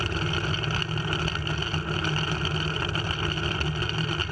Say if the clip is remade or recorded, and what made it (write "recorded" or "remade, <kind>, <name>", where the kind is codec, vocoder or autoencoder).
recorded